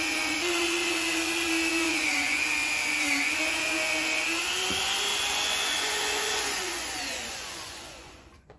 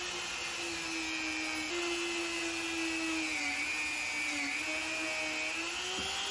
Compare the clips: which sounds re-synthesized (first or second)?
first